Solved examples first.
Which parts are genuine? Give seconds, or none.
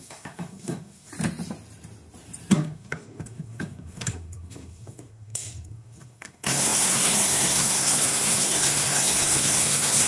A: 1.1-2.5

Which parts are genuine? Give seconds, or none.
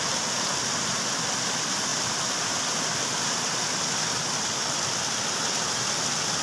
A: 0.0-6.4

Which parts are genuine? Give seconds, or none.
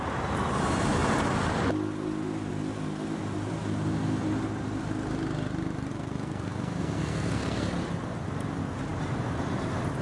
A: 0.0-5.9; 7.7-10.0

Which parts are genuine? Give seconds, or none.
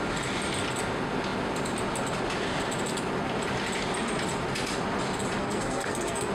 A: 0.0-5.4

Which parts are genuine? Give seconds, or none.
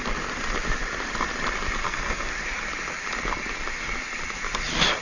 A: 0.0-1.8; 2.3-5.0